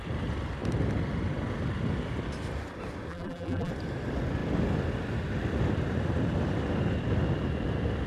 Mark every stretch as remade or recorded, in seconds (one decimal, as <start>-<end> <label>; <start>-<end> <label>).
0.0-3.1 recorded; 3.1-3.7 remade; 3.7-8.1 recorded